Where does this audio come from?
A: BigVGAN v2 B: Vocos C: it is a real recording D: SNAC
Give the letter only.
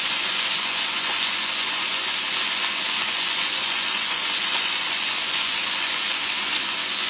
B